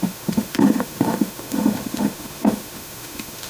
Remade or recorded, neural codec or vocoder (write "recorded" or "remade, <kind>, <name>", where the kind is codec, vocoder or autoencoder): remade, autoencoder, DAC-VAE